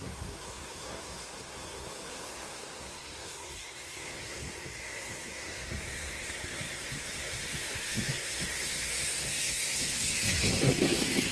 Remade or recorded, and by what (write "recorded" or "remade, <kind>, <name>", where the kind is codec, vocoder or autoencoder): remade, codec, SNAC